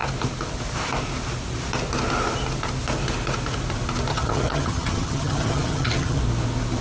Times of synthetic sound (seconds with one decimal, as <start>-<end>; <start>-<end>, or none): 4.1-6.2